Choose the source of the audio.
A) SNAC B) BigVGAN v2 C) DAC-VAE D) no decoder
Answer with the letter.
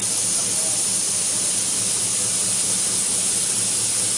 D